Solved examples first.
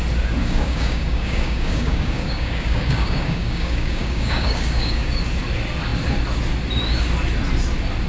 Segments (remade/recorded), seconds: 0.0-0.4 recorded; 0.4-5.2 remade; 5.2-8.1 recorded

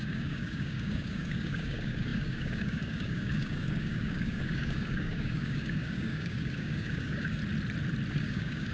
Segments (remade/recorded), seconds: 0.0-7.4 remade; 7.4-8.1 recorded; 8.1-8.7 remade

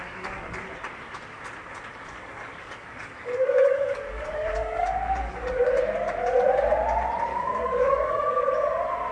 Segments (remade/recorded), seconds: 0.0-0.6 remade; 0.6-1.9 recorded; 1.9-5.7 remade; 5.7-7.3 recorded; 7.3-8.4 remade; 8.4-9.1 recorded

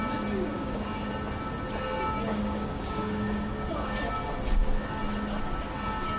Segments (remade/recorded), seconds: 0.0-0.5 recorded; 0.5-1.1 remade; 1.1-2.3 recorded; 2.3-4.1 remade; 4.1-6.2 recorded

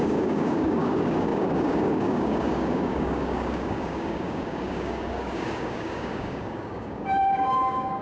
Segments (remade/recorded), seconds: 0.0-8.0 remade

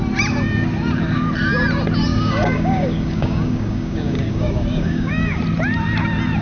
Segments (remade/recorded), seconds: 0.0-2.1 recorded; 2.1-5.4 remade; 5.4-6.4 recorded

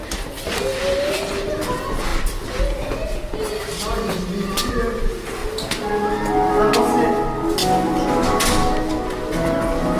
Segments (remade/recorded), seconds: 0.0-10.0 recorded

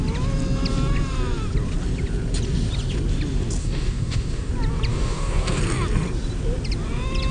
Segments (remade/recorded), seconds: 0.0-3.6 recorded; 3.6-4.5 remade; 4.5-4.9 recorded; 4.9-5.6 remade; 5.6-7.3 recorded